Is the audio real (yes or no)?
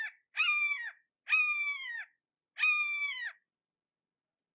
yes